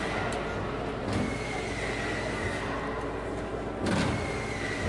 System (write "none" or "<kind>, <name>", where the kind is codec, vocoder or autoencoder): none